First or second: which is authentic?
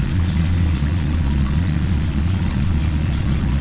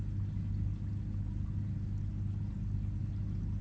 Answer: second